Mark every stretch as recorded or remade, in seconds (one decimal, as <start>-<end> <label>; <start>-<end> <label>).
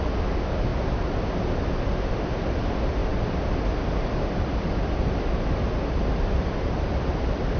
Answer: 0.0-3.0 recorded; 3.0-7.6 remade